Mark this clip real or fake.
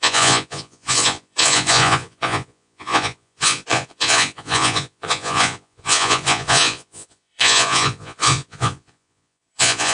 fake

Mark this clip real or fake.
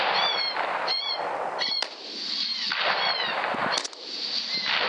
real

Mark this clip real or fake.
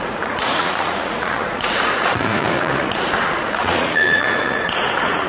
fake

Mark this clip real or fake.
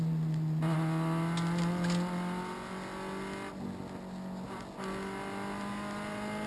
real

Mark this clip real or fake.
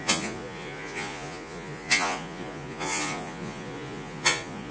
fake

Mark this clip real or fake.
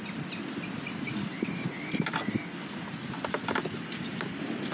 real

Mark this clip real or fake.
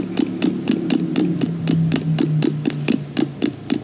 real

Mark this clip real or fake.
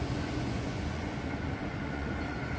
fake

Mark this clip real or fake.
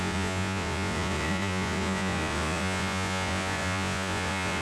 fake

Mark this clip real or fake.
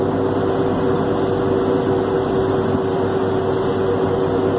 real